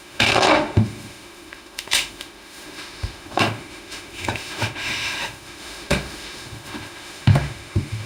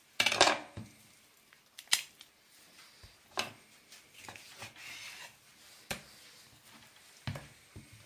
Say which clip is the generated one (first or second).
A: first